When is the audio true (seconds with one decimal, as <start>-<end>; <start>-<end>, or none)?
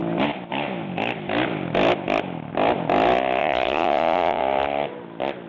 0.0-3.4; 4.4-5.5